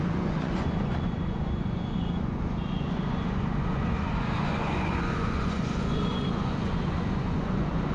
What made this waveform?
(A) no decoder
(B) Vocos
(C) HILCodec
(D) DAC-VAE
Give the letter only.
B